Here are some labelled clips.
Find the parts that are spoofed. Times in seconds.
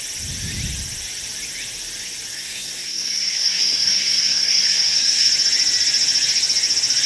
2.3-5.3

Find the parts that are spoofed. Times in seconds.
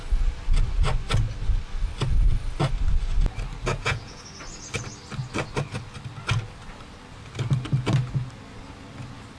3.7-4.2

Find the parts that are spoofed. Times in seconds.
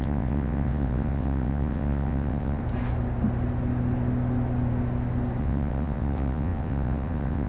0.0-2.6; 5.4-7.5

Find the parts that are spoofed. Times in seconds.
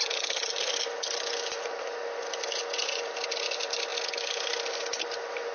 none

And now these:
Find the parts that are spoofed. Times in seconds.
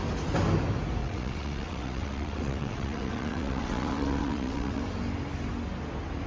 1.0-4.8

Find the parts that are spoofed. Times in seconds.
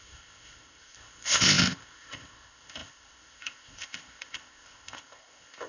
0.0-5.7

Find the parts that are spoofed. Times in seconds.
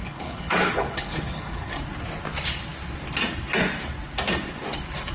0.0-1.8